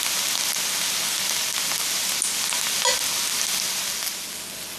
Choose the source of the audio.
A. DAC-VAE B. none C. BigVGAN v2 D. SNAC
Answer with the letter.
B